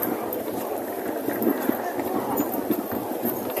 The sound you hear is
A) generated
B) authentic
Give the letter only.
B